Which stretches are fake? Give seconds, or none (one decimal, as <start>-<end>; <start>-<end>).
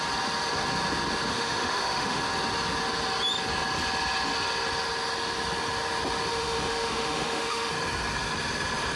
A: 1.3-2.2; 6.3-7.7